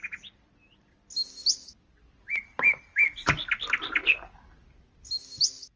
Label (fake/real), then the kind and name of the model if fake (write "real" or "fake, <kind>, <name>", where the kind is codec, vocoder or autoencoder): real